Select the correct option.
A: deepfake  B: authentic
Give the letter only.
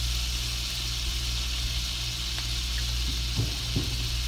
B